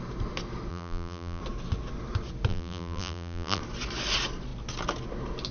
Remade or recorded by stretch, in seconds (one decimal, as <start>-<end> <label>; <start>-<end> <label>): 0.0-0.7 recorded; 0.7-1.4 remade; 1.4-2.5 recorded; 2.5-3.6 remade; 3.6-5.5 recorded